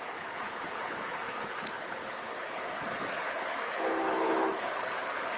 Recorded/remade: remade